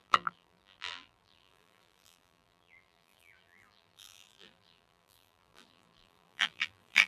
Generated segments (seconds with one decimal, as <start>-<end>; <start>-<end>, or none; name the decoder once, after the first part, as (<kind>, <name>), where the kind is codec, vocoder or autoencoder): 0.0-7.1 (vocoder, BigVGAN v2)